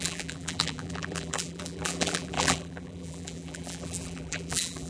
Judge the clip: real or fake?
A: fake